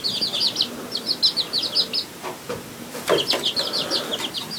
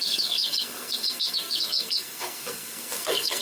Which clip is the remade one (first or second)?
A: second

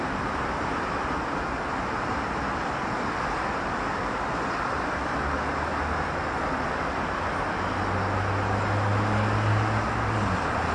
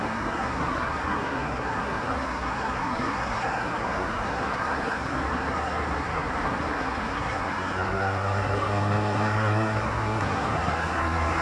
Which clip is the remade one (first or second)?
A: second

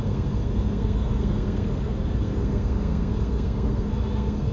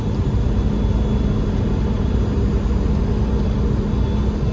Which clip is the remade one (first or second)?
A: first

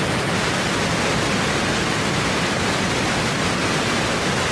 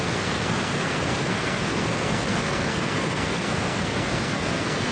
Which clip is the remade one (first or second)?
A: second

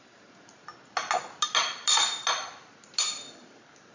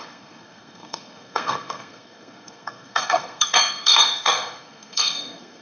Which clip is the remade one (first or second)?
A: second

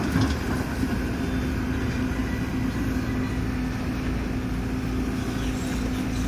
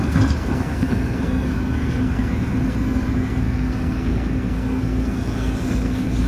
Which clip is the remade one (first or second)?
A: second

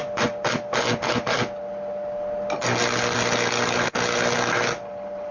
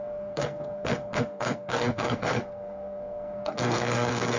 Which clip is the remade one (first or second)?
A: second